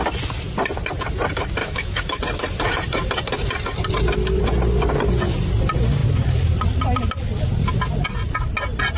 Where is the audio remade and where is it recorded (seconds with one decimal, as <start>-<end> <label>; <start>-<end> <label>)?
0.0-1.6 recorded; 1.6-2.2 remade; 2.2-9.0 recorded